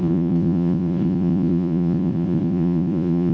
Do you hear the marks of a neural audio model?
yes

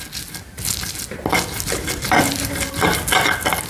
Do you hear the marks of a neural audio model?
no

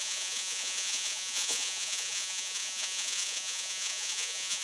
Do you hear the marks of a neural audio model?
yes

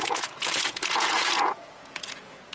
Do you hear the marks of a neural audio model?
yes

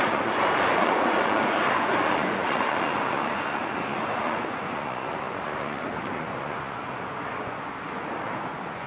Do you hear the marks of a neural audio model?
yes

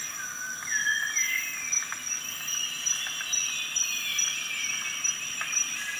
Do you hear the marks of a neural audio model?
no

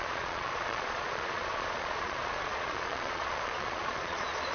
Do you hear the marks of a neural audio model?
yes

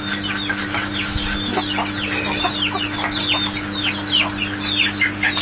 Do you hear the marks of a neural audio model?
no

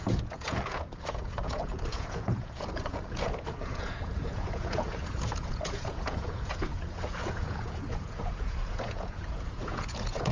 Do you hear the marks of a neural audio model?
yes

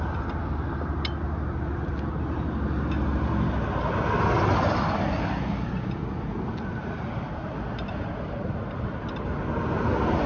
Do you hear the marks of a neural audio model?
no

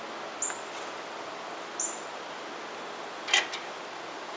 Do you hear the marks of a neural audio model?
no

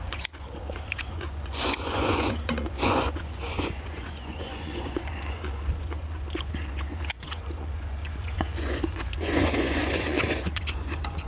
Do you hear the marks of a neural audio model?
yes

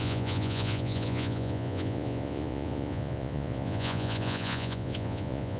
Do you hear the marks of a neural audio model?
yes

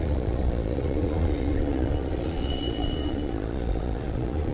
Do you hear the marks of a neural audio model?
yes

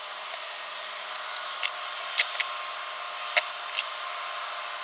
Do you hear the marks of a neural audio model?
no